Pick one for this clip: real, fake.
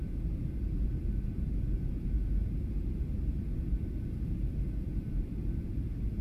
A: fake